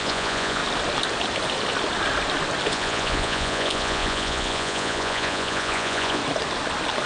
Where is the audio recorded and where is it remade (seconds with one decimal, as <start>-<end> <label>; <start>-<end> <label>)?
0.0-0.6 remade; 0.6-2.7 recorded; 2.7-6.2 remade; 6.2-7.1 recorded